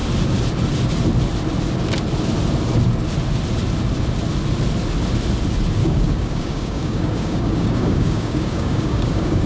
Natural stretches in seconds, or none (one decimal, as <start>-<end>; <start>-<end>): 0.0-5.8